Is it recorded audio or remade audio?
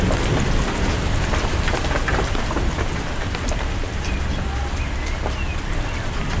recorded